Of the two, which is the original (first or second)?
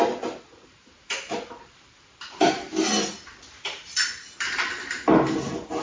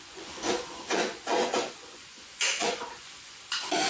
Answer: first